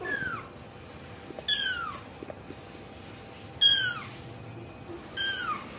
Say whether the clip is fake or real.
real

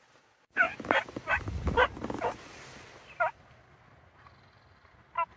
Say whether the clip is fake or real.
real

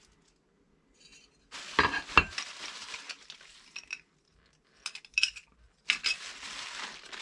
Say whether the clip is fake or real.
real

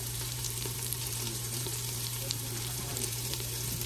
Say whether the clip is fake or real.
fake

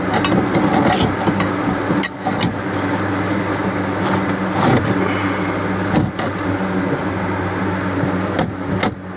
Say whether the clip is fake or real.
real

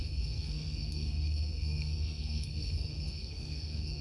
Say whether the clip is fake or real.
fake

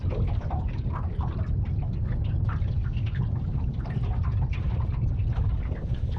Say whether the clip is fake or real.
real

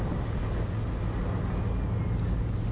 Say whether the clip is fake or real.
real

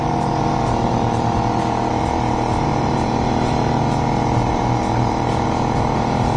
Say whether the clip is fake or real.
fake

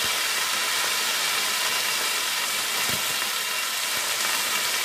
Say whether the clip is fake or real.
real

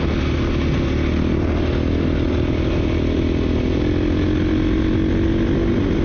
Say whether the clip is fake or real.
real